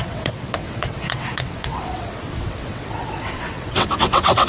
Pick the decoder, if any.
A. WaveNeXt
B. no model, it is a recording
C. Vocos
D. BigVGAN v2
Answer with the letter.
A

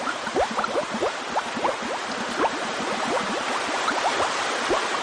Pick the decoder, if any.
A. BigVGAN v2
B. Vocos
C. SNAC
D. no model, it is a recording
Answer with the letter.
D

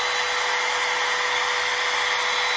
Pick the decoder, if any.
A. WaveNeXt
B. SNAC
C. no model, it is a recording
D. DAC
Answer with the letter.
C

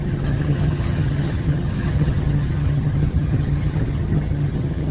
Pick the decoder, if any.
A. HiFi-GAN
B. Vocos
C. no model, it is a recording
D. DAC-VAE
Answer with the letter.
A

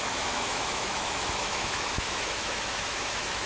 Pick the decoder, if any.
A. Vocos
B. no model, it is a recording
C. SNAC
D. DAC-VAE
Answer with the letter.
D